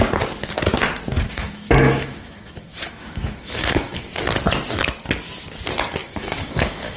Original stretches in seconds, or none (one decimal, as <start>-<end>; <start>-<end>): 0.0-1.3; 4.2-6.0